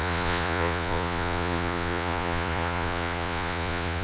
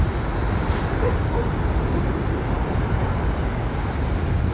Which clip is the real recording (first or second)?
second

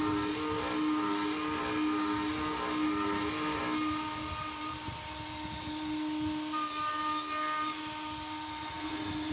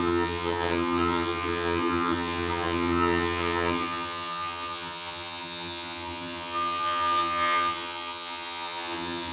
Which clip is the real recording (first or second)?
first